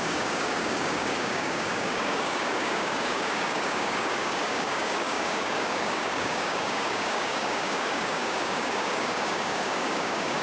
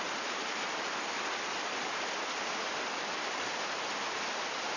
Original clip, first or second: second